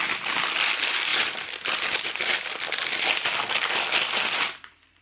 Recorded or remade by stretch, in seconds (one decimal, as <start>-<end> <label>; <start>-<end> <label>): 0.0-5.0 recorded